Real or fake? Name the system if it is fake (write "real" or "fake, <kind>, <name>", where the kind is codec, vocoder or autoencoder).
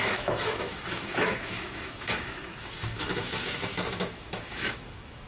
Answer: fake, autoencoder, DAC-VAE